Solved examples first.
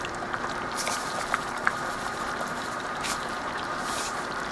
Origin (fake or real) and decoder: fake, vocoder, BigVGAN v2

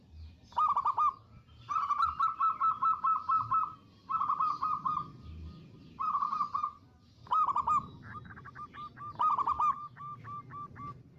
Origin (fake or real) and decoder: real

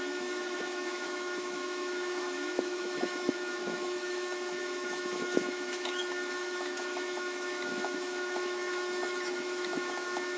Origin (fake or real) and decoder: fake, autoencoder, DAC-VAE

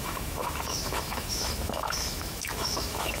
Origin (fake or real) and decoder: fake, autoencoder, DAC-VAE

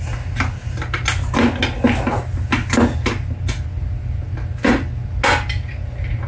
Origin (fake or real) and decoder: real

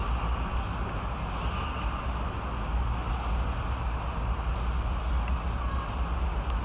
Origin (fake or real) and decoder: real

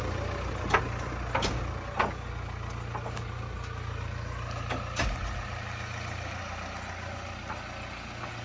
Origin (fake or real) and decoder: real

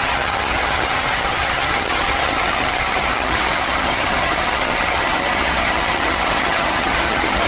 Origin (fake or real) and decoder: fake, vocoder, HiFi-GAN